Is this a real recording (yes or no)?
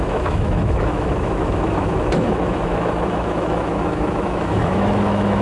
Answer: no